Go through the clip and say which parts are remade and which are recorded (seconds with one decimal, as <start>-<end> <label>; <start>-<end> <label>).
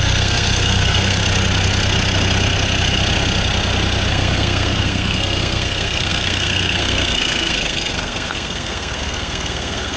0.0-1.2 remade; 1.2-4.1 recorded; 4.1-10.0 remade